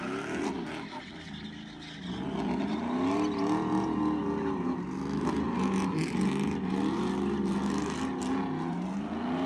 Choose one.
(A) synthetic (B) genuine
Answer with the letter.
B